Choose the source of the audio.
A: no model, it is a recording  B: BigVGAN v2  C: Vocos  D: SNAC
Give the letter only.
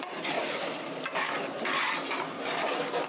A